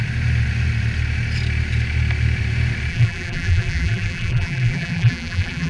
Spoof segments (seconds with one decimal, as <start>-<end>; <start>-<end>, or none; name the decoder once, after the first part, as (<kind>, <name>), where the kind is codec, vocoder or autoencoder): 2.9-5.7 (vocoder, BigVGAN v2)